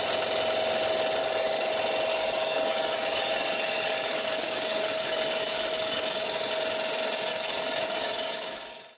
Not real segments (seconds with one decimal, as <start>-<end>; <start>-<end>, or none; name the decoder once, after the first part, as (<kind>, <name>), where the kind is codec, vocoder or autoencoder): 1.2-1.7 (codec, DAC); 2.1-6.5; 7.3-9.0